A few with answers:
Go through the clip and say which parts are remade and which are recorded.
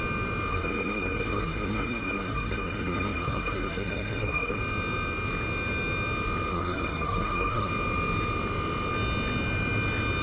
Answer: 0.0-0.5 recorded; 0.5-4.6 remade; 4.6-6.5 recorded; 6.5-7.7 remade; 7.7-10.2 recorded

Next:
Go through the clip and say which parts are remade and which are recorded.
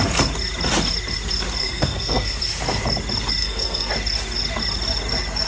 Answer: 0.0-1.6 recorded; 1.6-2.4 remade; 2.4-3.4 recorded; 3.4-3.9 remade; 3.9-5.5 recorded